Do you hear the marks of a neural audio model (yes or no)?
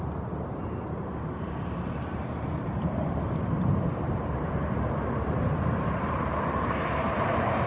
yes